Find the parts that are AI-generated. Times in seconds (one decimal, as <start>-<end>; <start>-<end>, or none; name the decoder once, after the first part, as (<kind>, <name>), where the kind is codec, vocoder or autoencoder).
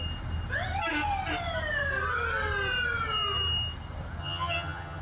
4.2-5.0 (vocoder, HiFi-GAN)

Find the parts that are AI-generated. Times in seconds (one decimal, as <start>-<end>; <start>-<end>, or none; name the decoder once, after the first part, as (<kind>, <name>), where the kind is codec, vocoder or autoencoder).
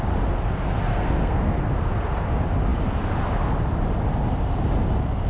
0.9-1.9 (codec, SNAC)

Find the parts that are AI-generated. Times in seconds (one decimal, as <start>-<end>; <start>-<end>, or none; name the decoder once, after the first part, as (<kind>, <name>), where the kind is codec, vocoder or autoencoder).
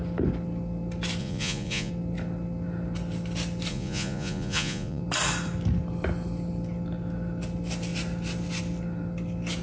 1.2-1.9 (vocoder, Vocos); 3.7-5.0